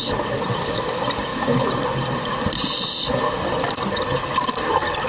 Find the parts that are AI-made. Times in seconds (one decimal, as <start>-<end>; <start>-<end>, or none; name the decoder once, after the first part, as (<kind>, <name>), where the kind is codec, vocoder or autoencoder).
none